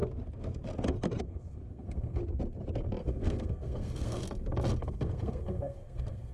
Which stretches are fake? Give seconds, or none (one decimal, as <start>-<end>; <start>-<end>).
1.2-2.2; 3.0-4.2; 4.8-6.3